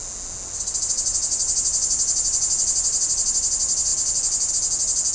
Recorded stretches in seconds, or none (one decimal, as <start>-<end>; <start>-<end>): 0.0-5.1

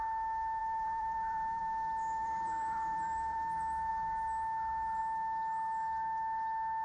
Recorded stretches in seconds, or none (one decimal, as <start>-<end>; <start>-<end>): 0.0-0.6; 1.6-2.2; 3.5-6.8

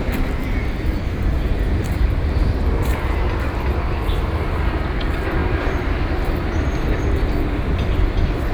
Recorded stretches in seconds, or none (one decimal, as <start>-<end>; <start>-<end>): 0.0-0.6; 4.5-5.4

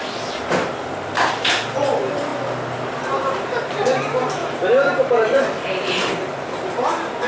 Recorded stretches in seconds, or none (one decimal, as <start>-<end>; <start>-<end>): 2.3-3.2

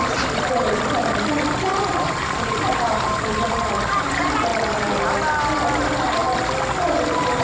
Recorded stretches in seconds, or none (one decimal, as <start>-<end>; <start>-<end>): 0.0-1.7; 4.1-4.5; 5.0-7.4